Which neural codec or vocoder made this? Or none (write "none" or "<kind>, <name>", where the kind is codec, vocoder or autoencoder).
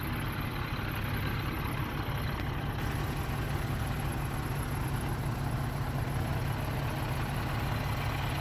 none